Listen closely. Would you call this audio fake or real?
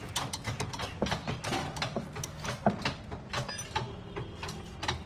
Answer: real